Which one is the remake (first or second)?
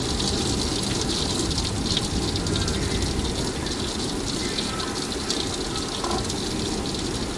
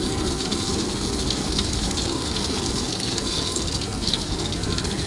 second